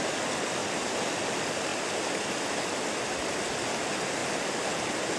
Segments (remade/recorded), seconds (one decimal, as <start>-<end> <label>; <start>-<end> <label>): 0.0-5.2 recorded